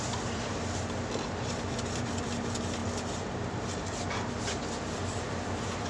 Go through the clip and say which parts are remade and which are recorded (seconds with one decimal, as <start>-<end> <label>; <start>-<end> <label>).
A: 0.0-2.8 remade; 2.8-4.3 recorded; 4.3-5.9 remade